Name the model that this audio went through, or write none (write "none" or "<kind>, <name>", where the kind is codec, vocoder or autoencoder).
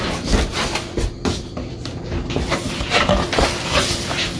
none